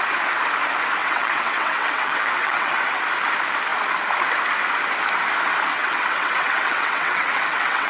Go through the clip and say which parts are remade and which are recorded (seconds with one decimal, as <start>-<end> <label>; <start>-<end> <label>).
0.0-1.0 recorded; 1.0-3.0 remade; 3.0-5.7 recorded; 5.7-7.9 remade